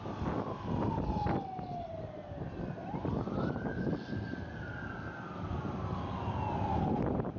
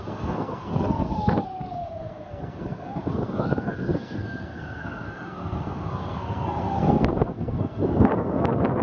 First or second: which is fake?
second